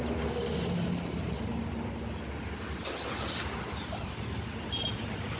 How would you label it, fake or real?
real